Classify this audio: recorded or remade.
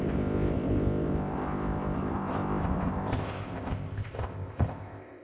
remade